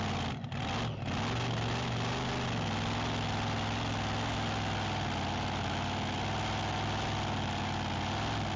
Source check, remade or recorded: recorded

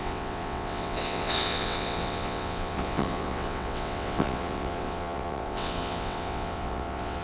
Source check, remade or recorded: remade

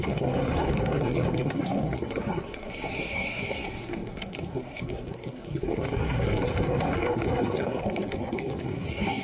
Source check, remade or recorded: remade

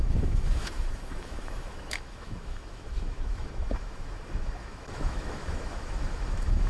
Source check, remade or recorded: remade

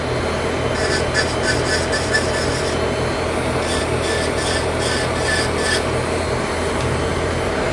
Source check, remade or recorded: recorded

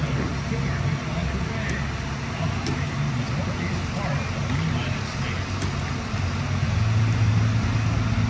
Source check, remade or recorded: recorded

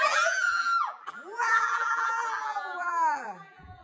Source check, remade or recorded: remade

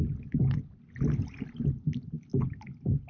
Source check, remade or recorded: recorded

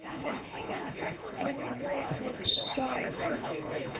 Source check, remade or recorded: remade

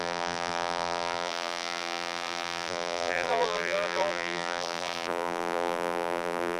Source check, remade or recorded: remade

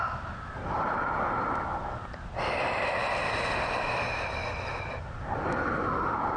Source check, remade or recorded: recorded